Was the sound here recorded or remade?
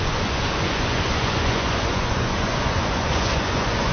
remade